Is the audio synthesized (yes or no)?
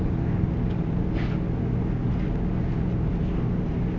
no